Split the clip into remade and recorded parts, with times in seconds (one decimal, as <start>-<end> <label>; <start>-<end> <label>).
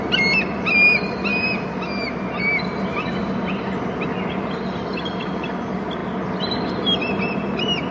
0.0-7.9 recorded